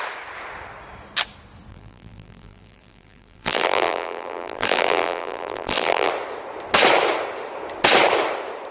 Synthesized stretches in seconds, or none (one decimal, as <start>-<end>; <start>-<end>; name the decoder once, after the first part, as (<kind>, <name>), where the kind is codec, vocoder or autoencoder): 1.7-6.1 (vocoder, BigVGAN v2)